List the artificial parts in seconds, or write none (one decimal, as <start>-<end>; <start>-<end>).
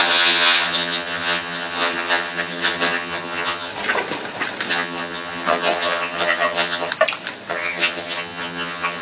0.0-3.7; 4.7-6.9; 7.5-9.0